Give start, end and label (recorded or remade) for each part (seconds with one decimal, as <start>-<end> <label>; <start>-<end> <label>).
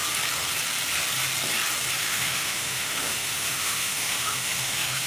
0.0-2.0 recorded; 2.0-5.1 remade